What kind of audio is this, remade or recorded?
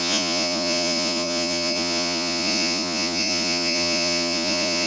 remade